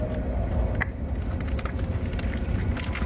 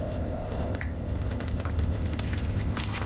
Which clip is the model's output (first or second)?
second